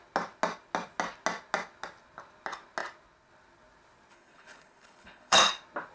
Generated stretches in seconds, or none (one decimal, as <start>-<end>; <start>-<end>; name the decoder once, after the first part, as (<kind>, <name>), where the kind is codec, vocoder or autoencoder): 4.1-5.5 (codec, HILCodec)